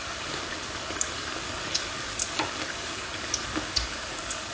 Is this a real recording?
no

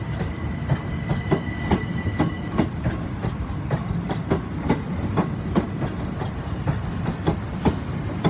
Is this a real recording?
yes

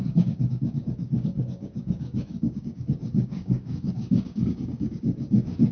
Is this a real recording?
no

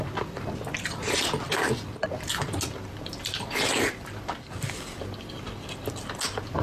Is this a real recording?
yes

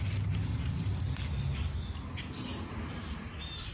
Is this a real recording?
yes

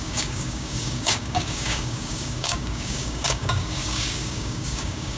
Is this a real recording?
no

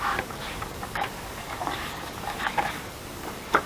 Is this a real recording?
no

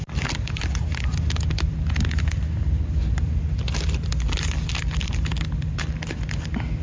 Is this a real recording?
yes